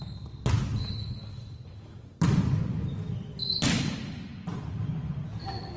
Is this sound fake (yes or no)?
no